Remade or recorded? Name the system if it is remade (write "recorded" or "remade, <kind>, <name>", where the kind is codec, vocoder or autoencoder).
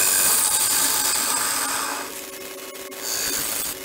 recorded